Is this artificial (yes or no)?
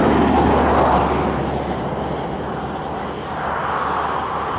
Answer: no